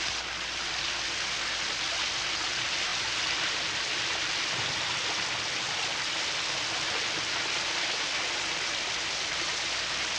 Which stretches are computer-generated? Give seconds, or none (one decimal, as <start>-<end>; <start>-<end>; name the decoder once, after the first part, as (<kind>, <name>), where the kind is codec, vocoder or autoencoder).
2.9-4.3 (vocoder, BigVGAN v2)